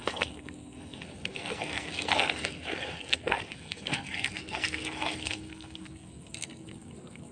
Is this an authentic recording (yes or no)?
no